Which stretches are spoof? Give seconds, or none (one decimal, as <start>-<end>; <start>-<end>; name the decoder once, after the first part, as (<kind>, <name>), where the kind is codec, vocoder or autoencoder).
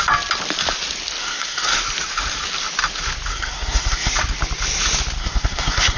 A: 1.2-1.8 (codec, SNAC); 3.3-4.1; 5.2-6.0